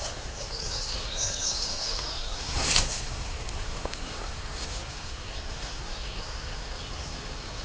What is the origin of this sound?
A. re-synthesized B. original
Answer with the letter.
A